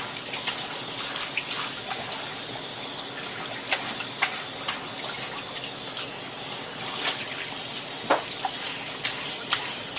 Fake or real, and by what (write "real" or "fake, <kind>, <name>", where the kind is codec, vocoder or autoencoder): real